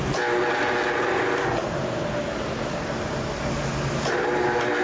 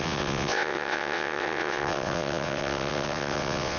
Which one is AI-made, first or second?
second